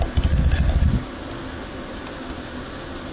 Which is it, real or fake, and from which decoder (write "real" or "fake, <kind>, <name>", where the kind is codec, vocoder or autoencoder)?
real